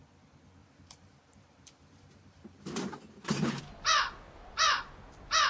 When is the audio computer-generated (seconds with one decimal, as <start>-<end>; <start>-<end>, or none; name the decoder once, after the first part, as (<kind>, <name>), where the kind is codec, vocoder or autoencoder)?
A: 0.6-3.6 (vocoder, BigVGAN v2)